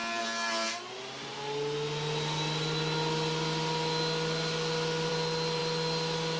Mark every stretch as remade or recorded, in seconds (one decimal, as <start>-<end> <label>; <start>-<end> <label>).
0.0-6.4 recorded